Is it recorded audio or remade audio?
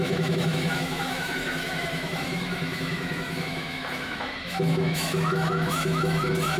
remade